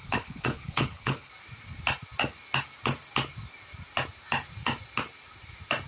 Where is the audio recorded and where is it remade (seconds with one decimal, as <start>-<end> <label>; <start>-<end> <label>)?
0.0-1.3 remade; 1.3-5.9 recorded